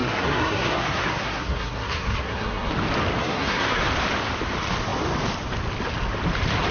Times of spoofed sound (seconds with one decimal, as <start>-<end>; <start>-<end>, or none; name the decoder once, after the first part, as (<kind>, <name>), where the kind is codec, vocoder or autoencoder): 0.0-2.7 (codec, SNAC); 3.2-3.8